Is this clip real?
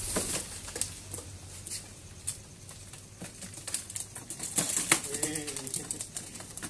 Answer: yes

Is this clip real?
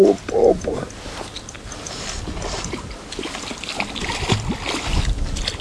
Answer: yes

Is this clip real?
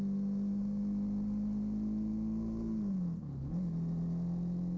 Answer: yes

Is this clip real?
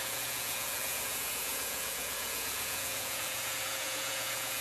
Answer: no